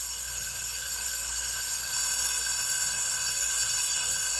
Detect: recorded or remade remade